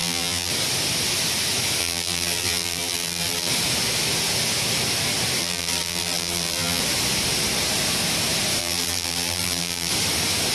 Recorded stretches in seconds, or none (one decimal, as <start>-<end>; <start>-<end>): 0.5-1.8; 3.5-5.4; 6.8-8.6; 9.9-10.5